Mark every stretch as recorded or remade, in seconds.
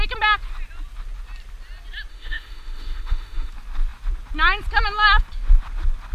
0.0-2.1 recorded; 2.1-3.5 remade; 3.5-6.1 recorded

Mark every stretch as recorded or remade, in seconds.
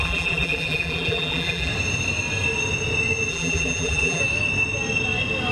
0.0-1.7 remade; 1.7-3.3 recorded; 3.3-4.2 remade; 4.2-5.5 recorded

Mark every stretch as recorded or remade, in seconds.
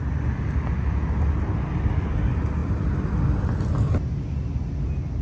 0.0-5.2 recorded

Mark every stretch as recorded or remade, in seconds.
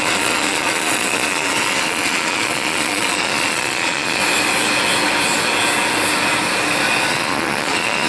0.0-4.2 remade; 4.2-7.1 recorded; 7.1-8.1 remade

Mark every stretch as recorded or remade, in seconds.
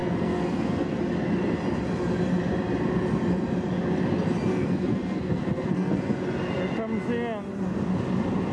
0.0-1.0 remade; 1.0-4.5 recorded; 4.5-6.0 remade; 6.0-8.5 recorded